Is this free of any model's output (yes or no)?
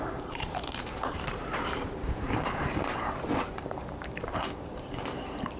no